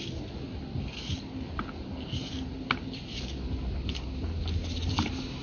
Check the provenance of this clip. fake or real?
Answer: real